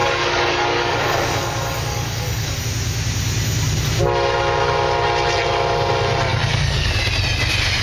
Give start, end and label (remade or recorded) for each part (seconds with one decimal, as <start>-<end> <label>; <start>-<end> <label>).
0.0-2.6 remade; 2.6-6.3 recorded; 6.3-6.9 remade; 6.9-7.8 recorded